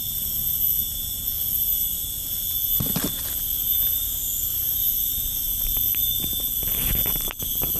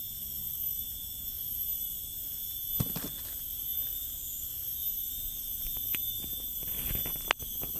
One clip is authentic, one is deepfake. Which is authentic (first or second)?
second